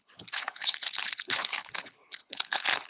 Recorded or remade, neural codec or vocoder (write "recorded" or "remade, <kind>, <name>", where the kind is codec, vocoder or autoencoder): remade, codec, HILCodec